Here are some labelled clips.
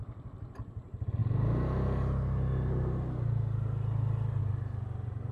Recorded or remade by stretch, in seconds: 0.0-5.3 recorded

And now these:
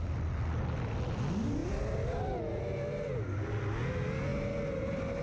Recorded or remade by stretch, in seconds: 0.0-1.6 recorded; 1.6-2.6 remade; 2.6-5.2 recorded